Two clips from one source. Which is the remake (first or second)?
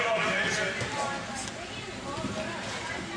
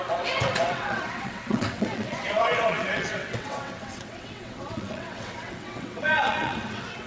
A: second